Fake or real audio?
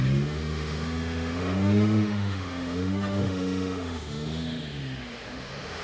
fake